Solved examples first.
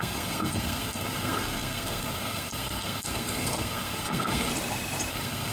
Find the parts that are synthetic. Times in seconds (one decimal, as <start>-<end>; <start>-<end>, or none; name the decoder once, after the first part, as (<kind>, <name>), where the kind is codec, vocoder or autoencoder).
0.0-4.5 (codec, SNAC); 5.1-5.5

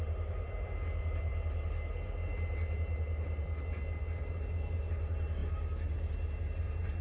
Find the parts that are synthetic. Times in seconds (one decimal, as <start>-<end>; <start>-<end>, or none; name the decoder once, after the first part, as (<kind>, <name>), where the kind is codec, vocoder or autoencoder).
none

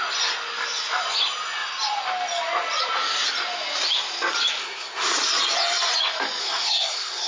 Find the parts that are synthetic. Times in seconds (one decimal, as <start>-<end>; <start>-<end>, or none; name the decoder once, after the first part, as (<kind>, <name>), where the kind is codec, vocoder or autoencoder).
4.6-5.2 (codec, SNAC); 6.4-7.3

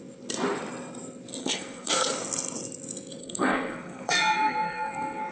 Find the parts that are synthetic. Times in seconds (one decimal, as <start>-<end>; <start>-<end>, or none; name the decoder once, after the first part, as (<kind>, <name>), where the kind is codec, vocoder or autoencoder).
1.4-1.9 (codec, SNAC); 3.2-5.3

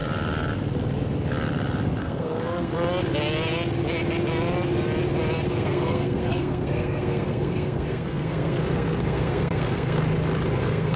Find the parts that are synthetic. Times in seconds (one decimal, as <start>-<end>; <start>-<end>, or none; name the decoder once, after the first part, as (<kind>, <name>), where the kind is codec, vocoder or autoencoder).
2.0-2.7 (codec, SNAC); 5.5-10.0; 10.6-11.0

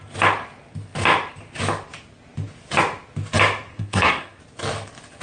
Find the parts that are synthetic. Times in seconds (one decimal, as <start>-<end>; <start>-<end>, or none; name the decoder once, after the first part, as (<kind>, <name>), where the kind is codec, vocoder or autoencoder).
3.7-4.4 (codec, SNAC)